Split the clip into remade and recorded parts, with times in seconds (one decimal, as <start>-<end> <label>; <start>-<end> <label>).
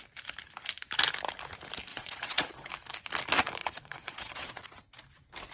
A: 0.0-1.9 recorded; 1.9-2.7 remade; 2.7-3.6 recorded; 3.6-4.7 remade; 4.7-5.5 recorded